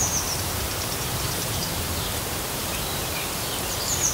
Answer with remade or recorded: remade